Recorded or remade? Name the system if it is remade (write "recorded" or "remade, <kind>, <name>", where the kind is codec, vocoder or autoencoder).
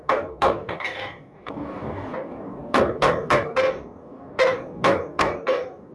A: remade, codec, DAC